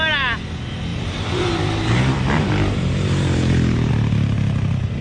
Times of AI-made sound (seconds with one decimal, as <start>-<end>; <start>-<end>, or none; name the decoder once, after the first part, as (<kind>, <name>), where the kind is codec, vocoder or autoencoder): 0.9-3.9 (vocoder, BigVGAN v2)